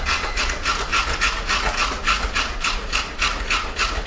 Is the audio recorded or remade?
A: remade